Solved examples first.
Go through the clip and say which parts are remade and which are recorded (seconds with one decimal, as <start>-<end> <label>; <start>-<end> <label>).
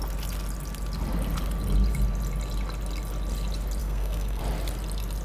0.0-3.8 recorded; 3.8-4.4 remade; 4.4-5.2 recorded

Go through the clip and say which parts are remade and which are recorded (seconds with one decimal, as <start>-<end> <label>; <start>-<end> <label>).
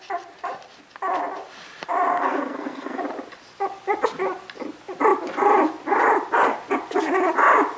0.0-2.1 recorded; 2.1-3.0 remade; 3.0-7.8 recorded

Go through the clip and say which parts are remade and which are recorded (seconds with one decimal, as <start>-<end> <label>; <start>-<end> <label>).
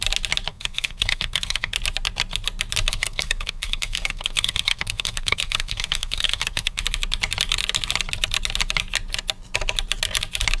0.0-0.5 recorded; 0.5-1.7 remade; 1.7-2.9 recorded; 2.9-6.8 remade; 6.8-10.6 recorded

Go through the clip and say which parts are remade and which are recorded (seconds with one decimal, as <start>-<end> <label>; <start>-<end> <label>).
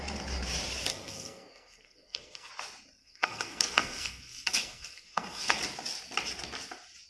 0.0-0.9 recorded; 0.9-2.5 remade; 2.5-3.0 recorded; 3.0-5.6 remade; 5.6-7.1 recorded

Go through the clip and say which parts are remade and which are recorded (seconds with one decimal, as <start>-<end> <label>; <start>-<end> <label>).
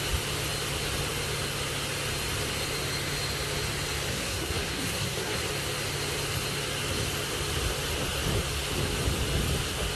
0.0-4.1 recorded; 4.1-5.5 remade; 5.5-9.9 recorded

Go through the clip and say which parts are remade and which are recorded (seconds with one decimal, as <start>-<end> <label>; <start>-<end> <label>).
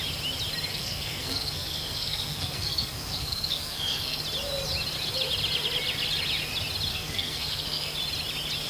0.0-0.7 recorded; 0.7-4.2 remade; 4.2-6.9 recorded; 6.9-7.9 remade; 7.9-8.7 recorded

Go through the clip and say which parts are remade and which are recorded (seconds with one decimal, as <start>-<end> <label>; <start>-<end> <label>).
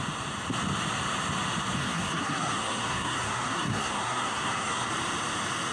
0.0-1.8 recorded; 1.8-4.9 remade; 4.9-5.7 recorded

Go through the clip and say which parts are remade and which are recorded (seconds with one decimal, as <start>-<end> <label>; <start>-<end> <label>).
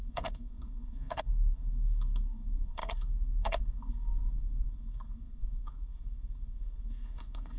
0.0-7.6 remade